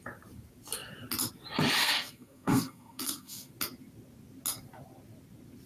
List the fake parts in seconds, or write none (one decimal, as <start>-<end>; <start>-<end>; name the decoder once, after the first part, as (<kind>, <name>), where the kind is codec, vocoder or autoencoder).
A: 1.8-3.5 (codec, SNAC)